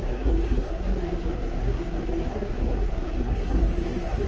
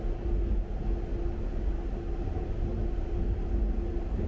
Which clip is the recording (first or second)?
second